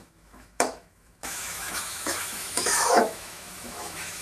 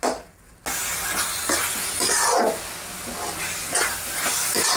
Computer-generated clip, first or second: first